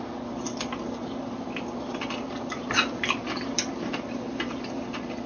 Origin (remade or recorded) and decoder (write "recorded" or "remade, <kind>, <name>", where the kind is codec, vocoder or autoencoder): recorded